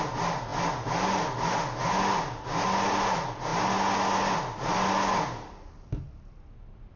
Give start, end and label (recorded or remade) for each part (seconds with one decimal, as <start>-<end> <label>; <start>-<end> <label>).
0.0-7.0 recorded